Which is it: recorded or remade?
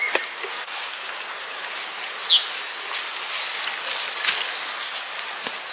recorded